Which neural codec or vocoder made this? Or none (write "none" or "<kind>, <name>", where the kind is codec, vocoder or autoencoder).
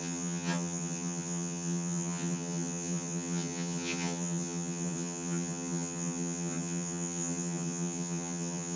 vocoder, HiFi-GAN